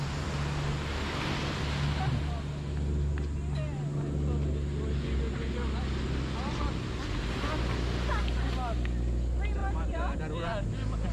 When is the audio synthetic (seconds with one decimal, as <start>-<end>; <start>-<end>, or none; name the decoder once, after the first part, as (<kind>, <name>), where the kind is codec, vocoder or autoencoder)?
9.6-10.2 (vocoder, BigVGAN v2)